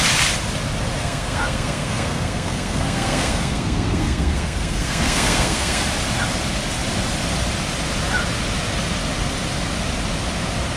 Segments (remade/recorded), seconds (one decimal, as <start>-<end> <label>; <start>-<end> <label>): 0.0-1.0 recorded; 1.0-5.8 remade; 5.8-10.8 recorded